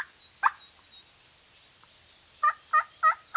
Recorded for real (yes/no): yes